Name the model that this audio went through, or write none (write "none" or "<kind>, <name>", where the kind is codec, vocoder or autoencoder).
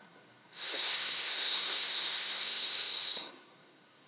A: codec, SNAC